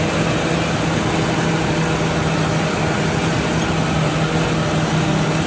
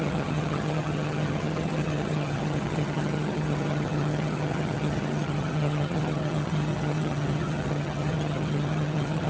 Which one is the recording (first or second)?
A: first